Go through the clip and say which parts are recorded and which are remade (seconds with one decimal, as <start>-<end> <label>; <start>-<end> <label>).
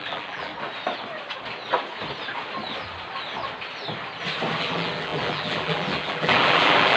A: 0.0-0.5 remade; 0.5-4.6 recorded; 4.6-7.0 remade